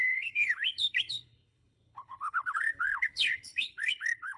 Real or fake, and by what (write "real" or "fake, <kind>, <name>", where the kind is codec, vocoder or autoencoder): fake, codec, HILCodec